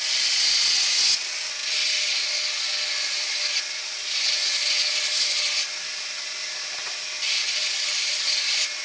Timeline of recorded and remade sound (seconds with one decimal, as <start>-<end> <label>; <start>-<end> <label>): 0.0-8.8 recorded